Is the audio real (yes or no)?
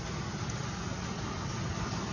yes